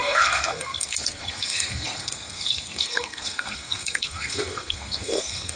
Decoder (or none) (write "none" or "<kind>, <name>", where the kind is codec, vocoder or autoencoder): codec, SNAC